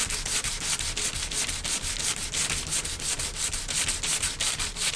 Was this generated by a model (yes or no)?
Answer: no